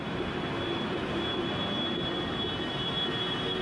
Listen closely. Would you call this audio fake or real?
real